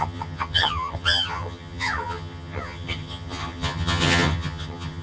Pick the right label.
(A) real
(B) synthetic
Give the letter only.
B